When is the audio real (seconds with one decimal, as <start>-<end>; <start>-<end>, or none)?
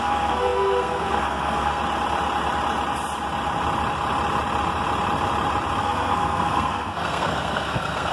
1.8-5.8